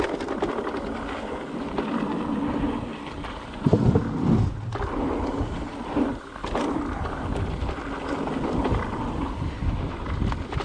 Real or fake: real